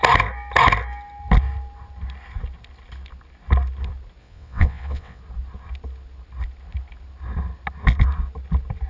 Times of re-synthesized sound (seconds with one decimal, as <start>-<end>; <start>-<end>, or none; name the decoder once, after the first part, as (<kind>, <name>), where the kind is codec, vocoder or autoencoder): 4.2-5.2 (vocoder, WaveNeXt)